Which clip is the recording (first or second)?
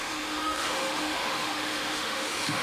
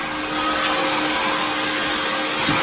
second